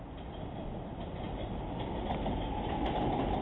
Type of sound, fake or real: real